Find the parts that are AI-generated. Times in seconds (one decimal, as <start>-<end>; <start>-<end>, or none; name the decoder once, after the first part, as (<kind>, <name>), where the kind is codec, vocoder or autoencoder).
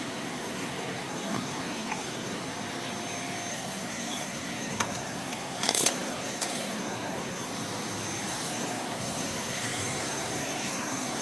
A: 0.0-2.5 (codec, SNAC); 3.5-7.5; 8.3-11.2